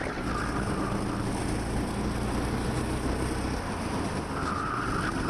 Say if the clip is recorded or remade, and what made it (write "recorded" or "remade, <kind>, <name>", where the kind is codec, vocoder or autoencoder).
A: recorded